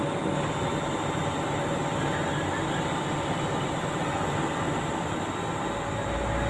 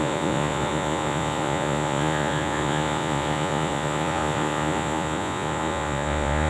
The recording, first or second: first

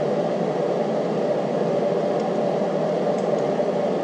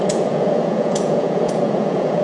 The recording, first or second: first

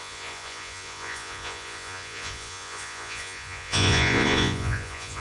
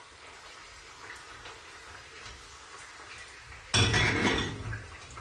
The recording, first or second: second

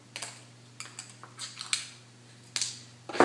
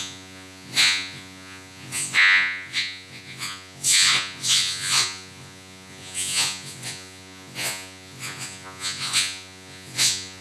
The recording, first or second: first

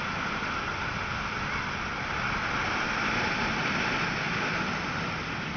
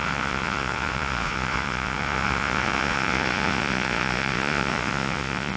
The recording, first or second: first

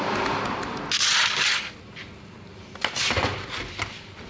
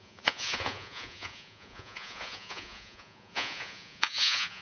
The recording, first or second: first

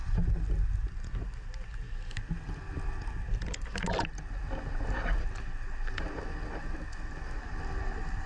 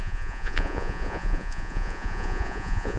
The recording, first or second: first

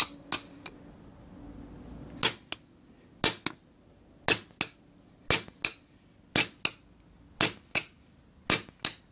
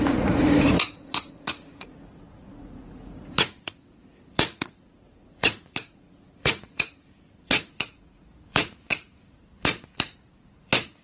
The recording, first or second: first